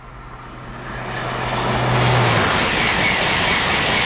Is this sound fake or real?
real